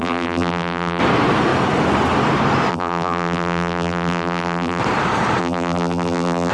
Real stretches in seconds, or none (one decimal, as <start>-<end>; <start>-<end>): 1.0-2.7; 4.8-5.4